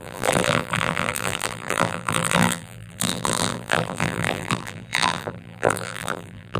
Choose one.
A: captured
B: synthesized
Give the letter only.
B